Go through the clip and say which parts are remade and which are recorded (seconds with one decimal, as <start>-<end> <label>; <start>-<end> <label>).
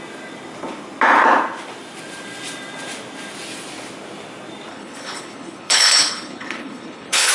0.0-4.7 recorded; 4.7-7.3 remade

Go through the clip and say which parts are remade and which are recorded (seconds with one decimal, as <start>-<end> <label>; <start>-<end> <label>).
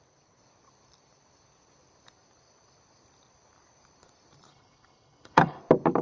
0.0-4.5 recorded; 4.5-5.6 remade; 5.6-6.0 recorded